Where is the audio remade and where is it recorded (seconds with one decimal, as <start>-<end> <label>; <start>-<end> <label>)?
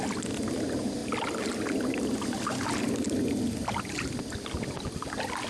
0.0-5.5 recorded